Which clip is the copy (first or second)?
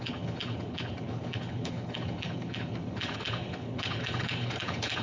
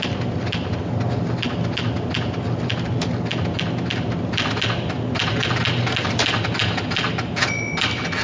first